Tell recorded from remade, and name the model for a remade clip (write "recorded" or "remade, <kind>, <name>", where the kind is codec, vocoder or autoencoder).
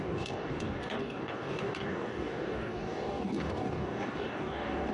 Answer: remade, codec, DAC